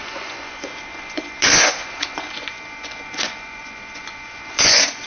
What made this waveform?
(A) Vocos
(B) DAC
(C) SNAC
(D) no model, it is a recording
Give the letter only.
A